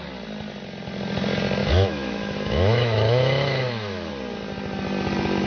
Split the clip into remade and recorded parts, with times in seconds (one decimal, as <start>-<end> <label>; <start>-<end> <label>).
0.0-1.6 recorded; 1.6-4.1 remade; 4.1-5.5 recorded